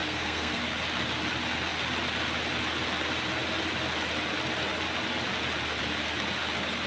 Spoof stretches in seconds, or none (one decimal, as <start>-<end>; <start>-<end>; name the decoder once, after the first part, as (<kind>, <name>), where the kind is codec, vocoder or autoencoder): 0.0-0.6 (codec, SNAC)